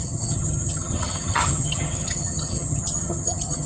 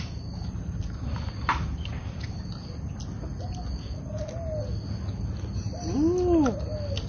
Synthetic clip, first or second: first